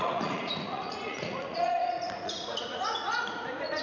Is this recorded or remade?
remade